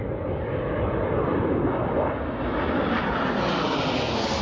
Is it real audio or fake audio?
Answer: real